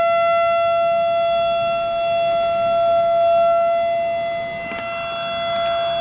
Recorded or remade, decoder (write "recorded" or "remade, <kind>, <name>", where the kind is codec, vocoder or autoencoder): recorded